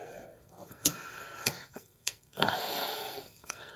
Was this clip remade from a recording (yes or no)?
yes